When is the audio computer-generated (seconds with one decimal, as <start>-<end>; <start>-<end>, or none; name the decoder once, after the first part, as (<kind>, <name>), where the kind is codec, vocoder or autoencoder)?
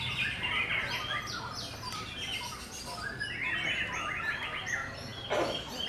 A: none